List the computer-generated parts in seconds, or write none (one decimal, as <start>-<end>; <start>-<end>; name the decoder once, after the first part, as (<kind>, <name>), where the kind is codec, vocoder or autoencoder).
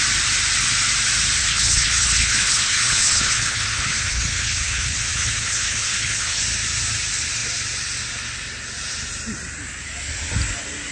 1.4-6.4 (codec, HILCodec)